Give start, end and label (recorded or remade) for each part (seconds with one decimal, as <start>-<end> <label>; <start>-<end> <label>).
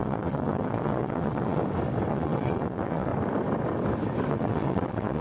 0.0-1.6 remade; 1.6-2.1 recorded; 2.1-3.1 remade; 3.1-4.3 recorded; 4.3-5.2 remade